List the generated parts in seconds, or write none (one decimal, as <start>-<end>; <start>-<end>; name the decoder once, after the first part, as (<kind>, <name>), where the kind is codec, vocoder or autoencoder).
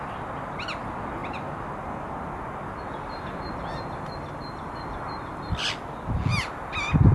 none